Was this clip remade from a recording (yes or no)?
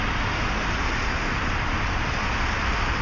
no